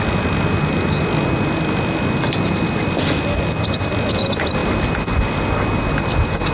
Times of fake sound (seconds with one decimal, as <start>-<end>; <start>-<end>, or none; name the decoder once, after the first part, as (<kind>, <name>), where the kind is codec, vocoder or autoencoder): none